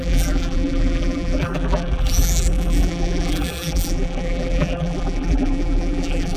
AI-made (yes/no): yes